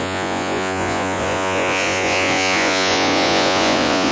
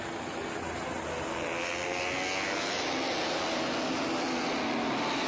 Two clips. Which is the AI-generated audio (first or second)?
first